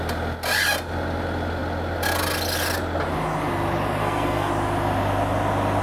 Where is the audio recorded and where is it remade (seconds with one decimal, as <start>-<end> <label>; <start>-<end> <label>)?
0.0-4.0 recorded; 4.0-4.5 remade; 4.5-5.8 recorded